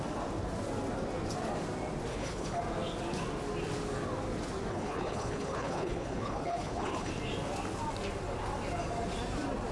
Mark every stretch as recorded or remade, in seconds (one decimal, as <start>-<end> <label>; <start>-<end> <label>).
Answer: 0.0-2.1 recorded; 2.1-2.6 remade; 2.6-4.7 recorded; 4.7-7.1 remade; 7.1-9.7 recorded